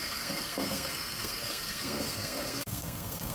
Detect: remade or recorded remade